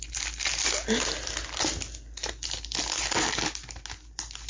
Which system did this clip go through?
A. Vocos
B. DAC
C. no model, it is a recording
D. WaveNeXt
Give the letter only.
C